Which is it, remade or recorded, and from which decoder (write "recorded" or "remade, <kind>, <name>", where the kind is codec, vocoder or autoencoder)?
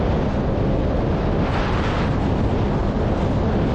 recorded